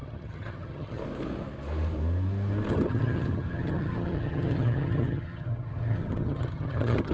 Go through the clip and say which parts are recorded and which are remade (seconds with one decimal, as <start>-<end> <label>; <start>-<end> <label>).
0.0-1.0 remade; 1.0-2.7 recorded; 2.7-7.1 remade